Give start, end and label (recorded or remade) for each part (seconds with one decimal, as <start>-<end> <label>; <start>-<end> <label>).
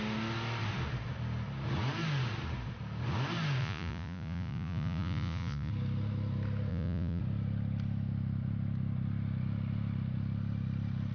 0.0-3.6 recorded; 3.6-5.7 remade; 5.7-6.7 recorded; 6.7-7.2 remade; 7.2-11.1 recorded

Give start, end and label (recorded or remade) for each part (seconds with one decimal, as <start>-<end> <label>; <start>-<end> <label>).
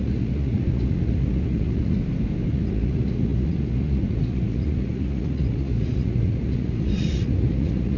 0.0-2.0 remade; 2.0-2.5 recorded; 2.5-8.0 remade